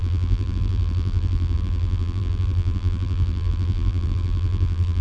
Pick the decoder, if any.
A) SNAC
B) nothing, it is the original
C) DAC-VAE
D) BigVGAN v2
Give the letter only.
D